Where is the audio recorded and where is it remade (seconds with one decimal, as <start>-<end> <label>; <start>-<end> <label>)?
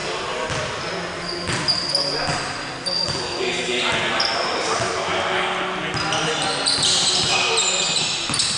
0.0-8.6 recorded